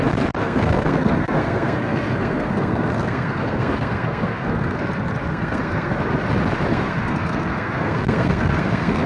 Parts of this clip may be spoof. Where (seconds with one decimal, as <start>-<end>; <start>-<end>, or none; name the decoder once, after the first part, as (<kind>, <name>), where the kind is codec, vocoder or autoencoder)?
0.4-4.8 (codec, SNAC); 5.3-5.9; 6.7-9.1